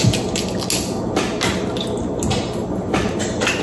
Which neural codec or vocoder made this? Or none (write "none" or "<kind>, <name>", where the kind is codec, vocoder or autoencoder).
none